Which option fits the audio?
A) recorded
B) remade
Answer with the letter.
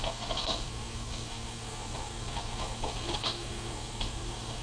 B